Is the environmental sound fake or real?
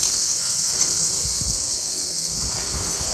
fake